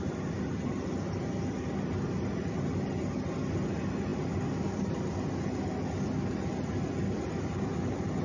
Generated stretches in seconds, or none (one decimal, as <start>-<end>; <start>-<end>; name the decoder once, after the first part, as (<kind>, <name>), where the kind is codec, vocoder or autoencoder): none